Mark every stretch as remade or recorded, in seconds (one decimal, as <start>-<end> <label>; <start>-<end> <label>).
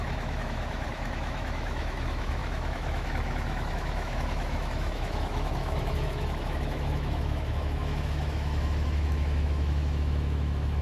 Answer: 0.0-10.8 remade